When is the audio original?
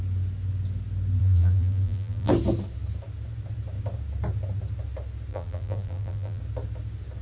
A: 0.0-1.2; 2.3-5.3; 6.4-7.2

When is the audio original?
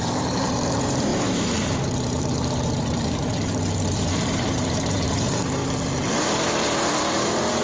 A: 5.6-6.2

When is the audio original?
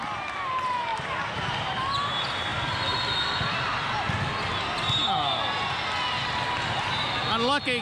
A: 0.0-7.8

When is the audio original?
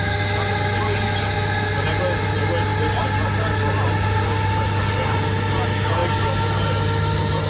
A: 0.0-7.5